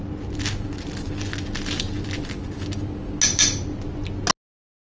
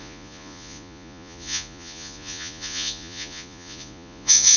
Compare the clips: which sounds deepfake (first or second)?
second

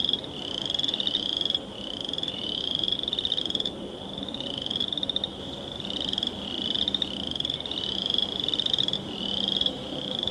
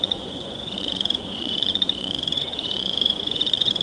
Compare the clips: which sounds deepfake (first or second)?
second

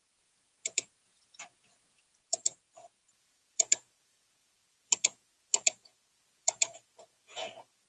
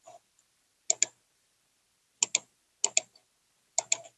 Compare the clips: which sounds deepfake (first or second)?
first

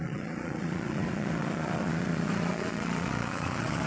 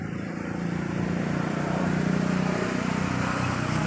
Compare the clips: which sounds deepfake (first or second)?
first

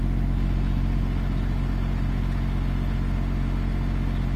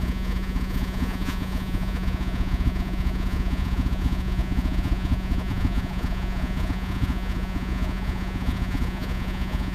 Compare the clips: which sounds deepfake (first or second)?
second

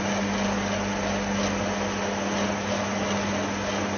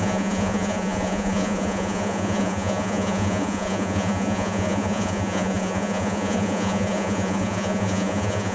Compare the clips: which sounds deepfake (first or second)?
second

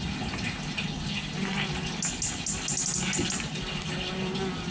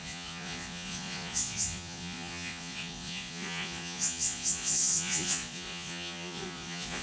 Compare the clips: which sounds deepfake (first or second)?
second